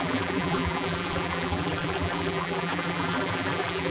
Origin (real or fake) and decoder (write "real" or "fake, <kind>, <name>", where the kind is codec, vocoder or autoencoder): fake, vocoder, BigVGAN v2